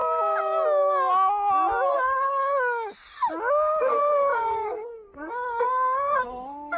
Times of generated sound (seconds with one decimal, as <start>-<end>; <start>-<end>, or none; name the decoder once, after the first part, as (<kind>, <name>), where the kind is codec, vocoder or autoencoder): 1.9-2.4 (codec, SNAC); 3.8-6.8

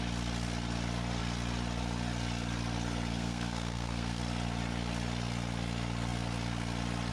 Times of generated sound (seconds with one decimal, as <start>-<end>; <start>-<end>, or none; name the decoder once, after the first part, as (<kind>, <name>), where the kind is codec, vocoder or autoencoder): 3.1-4.2 (codec, SNAC)